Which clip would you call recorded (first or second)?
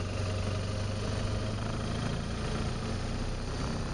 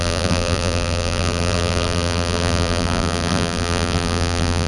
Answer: first